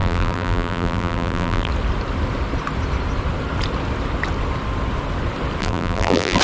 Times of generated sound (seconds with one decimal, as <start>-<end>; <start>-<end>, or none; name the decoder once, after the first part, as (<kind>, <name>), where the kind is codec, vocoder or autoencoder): 0.0-1.7 (vocoder, BigVGAN v2); 5.6-6.4